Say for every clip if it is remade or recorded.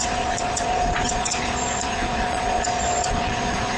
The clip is remade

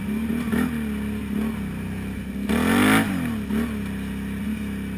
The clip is recorded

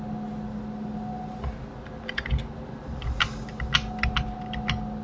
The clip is recorded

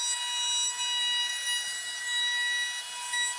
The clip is recorded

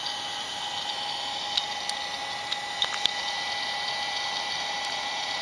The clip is recorded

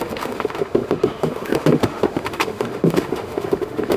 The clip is remade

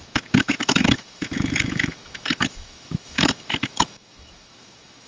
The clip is remade